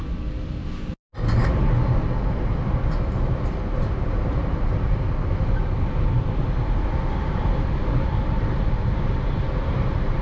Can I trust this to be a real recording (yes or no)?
yes